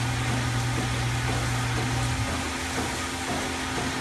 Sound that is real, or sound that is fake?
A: real